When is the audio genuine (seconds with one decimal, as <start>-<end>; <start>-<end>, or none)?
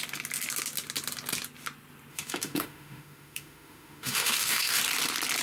0.0-2.1; 4.8-5.4